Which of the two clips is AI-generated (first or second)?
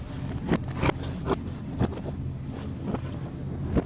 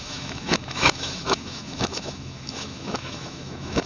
second